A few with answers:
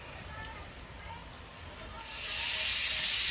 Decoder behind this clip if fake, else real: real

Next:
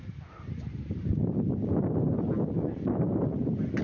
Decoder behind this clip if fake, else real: real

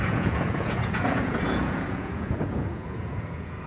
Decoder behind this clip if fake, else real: fake, vocoder, Vocos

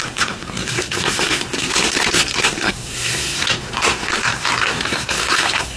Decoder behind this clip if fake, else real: fake, codec, SNAC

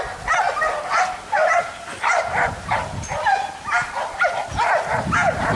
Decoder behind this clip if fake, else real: real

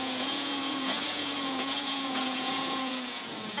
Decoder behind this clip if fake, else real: fake, vocoder, Vocos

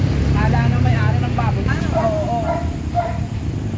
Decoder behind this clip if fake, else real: real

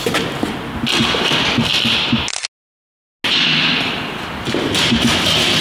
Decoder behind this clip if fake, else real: real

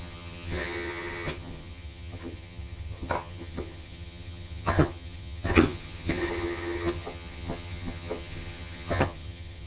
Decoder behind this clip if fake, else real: fake, vocoder, HiFi-GAN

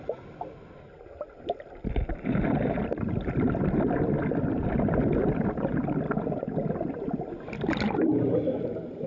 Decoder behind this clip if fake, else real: real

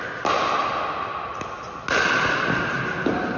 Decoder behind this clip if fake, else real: real